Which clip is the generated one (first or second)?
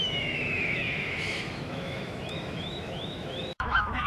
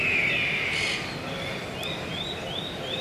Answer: first